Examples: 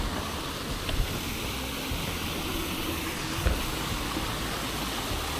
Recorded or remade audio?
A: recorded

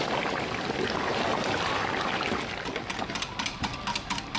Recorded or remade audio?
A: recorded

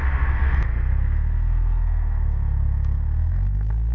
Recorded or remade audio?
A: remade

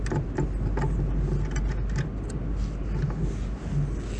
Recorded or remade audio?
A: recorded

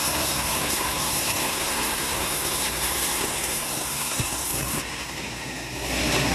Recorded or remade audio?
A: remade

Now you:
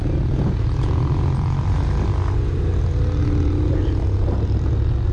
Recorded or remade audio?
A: recorded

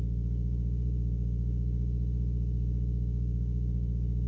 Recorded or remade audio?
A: recorded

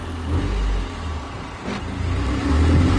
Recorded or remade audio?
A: recorded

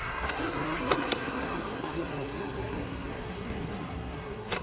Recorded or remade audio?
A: remade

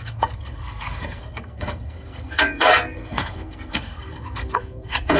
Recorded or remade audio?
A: remade